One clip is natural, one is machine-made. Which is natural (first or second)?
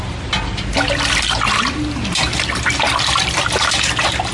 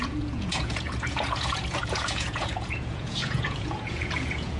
first